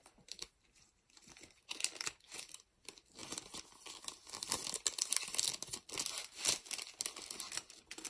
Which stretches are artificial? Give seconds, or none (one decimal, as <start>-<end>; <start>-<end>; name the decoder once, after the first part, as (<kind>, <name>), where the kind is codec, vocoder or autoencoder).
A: none